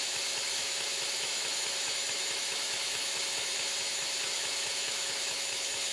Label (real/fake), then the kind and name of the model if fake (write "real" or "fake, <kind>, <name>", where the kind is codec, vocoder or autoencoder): fake, autoencoder, DAC-VAE